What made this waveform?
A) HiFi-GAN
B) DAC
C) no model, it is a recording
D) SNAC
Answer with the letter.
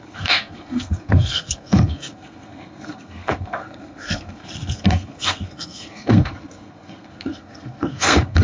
D